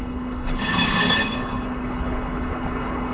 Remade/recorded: remade